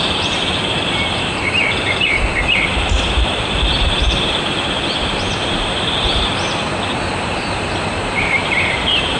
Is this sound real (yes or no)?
no